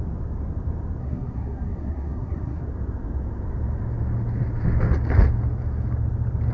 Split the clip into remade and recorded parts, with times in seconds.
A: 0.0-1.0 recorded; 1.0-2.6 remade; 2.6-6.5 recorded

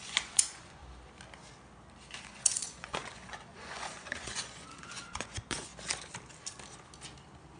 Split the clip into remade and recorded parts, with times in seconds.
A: 0.0-0.8 remade; 0.8-2.2 recorded; 2.2-5.7 remade; 5.7-7.6 recorded

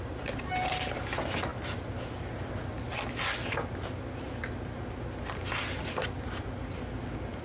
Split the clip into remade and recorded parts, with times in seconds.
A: 0.0-7.4 recorded

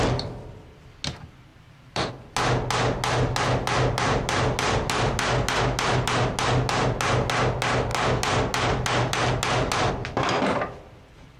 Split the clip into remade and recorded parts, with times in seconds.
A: 0.0-1.5 recorded; 1.5-2.1 remade; 2.1-11.4 recorded

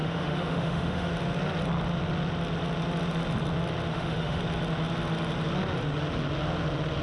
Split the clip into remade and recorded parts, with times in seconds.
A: 0.0-1.1 remade; 1.1-3.9 recorded; 3.9-4.4 remade; 4.4-7.0 recorded

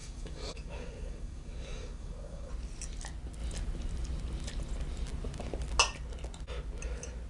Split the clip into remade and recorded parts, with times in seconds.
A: 0.0-2.5 remade; 2.5-7.3 recorded

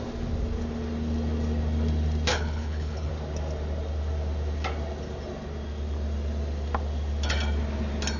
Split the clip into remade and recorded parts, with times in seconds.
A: 0.0-2.3 recorded; 2.3-3.1 remade; 3.1-8.2 recorded